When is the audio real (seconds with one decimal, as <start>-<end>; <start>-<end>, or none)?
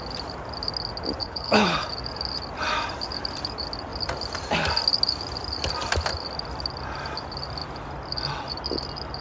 0.0-1.2; 1.9-9.2